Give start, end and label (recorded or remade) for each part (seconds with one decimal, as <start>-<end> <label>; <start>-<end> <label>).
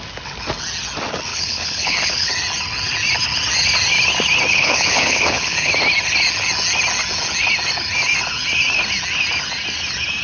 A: 0.0-1.3 recorded; 1.3-2.3 remade; 2.3-4.5 recorded; 4.5-5.7 remade; 5.7-10.2 recorded